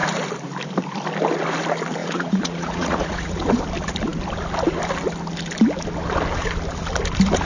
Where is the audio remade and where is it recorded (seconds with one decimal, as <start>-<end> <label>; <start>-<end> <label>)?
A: 0.0-2.0 recorded; 2.0-3.6 remade; 3.6-7.5 recorded